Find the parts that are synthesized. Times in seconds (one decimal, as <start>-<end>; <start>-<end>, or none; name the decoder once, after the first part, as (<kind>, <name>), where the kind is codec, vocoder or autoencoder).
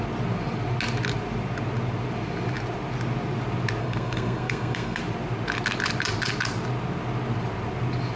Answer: 3.8-5.0 (codec, SNAC)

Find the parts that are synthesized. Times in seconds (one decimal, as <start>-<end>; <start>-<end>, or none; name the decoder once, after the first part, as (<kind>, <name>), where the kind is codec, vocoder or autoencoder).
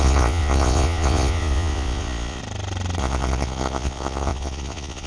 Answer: 0.0-2.4 (vocoder, Vocos); 3.0-5.1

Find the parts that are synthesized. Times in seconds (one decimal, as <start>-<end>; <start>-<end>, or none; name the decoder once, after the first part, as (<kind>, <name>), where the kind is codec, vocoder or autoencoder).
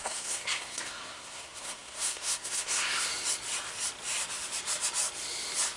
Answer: 0.0-3.1 (codec, SNAC)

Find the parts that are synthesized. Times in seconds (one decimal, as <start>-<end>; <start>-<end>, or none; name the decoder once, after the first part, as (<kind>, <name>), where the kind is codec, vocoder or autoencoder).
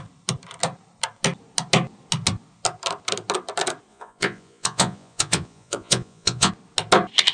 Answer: 3.9-6.5 (vocoder, Vocos)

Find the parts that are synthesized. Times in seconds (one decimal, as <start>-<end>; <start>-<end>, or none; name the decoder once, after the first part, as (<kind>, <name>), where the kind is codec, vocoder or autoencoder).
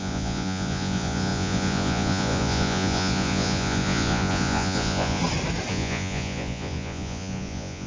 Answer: 0.0-5.2 (vocoder, Vocos); 5.7-7.9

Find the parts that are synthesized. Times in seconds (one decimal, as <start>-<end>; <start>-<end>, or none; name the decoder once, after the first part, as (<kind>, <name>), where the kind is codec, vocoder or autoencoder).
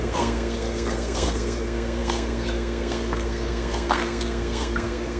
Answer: 0.0-5.2 (codec, SNAC)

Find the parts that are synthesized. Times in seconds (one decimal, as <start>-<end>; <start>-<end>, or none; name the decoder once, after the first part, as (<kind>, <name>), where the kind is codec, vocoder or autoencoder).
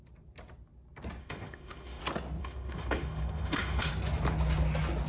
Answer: 1.2-2.0 (autoencoder, DAC-VAE); 2.4-3.9